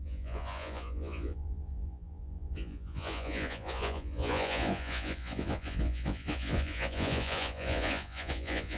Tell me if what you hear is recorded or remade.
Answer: remade